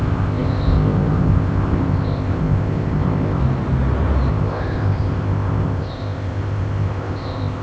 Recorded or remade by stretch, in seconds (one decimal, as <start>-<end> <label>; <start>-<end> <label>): 0.0-3.4 remade; 3.4-4.3 recorded; 4.3-7.6 remade